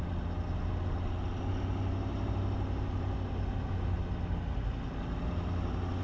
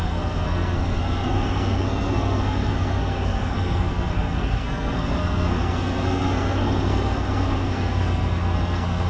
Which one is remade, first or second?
second